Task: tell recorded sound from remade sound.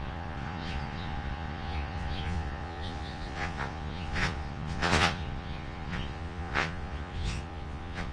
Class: remade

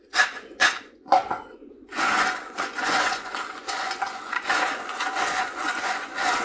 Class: remade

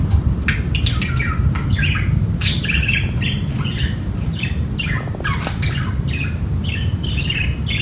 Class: recorded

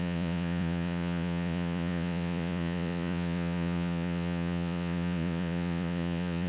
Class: remade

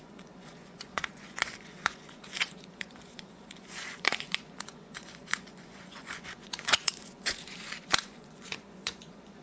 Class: remade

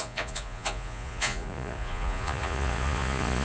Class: remade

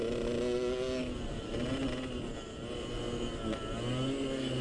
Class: recorded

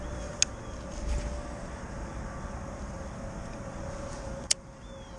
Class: recorded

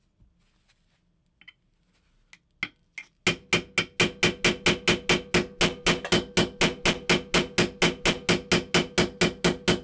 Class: recorded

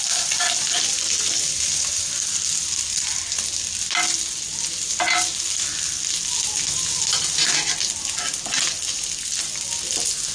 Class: recorded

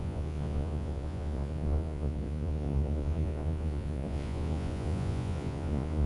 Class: remade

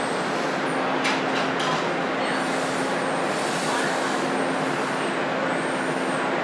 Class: recorded